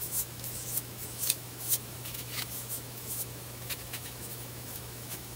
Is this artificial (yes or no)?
yes